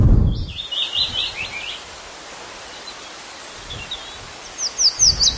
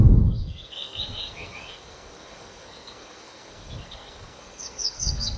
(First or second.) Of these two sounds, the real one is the first